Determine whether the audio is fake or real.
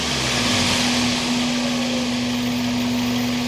real